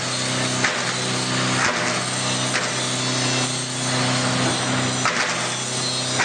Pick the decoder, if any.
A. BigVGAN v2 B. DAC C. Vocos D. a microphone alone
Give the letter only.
D